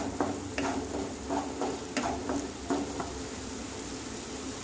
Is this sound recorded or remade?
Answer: recorded